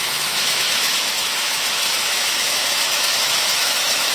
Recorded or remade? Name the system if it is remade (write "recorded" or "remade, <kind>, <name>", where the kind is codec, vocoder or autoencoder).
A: remade, autoencoder, DAC-VAE